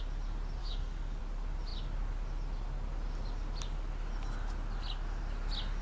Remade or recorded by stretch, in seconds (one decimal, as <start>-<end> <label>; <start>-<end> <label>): 0.0-0.6 recorded; 0.6-1.2 remade; 1.2-5.8 recorded